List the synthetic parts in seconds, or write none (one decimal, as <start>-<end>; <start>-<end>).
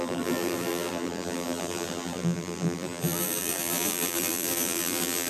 0.0-5.3